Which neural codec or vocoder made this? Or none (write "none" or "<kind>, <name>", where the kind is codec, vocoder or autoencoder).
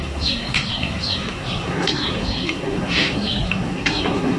codec, SNAC